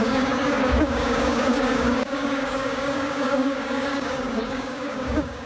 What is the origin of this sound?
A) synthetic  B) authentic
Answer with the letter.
A